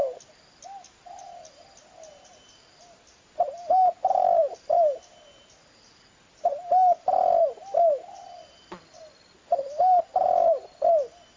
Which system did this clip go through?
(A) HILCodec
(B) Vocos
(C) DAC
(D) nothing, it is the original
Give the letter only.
D